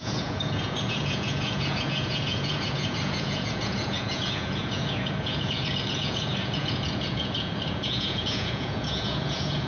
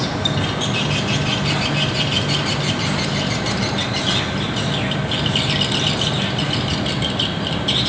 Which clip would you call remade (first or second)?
first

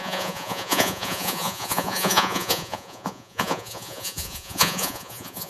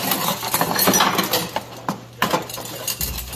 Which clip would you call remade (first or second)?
first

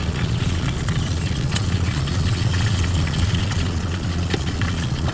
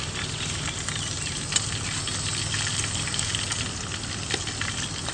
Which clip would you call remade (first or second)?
first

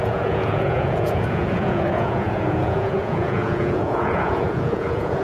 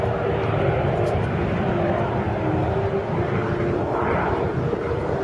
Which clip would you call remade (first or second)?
first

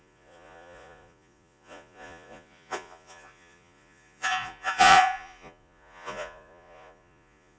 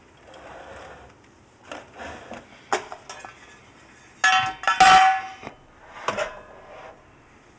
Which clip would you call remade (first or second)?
first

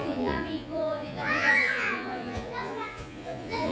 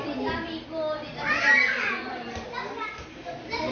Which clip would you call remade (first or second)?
first